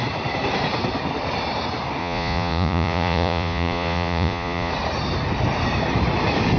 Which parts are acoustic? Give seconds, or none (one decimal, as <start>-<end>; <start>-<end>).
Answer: 0.0-2.0; 4.7-6.6